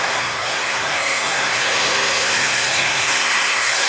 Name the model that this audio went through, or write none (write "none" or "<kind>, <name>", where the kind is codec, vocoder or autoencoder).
codec, SNAC